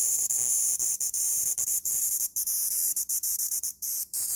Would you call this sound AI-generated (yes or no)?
yes